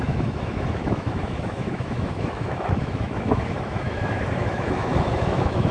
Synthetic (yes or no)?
yes